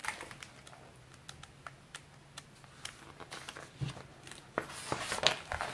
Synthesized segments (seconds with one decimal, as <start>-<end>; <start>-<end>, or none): none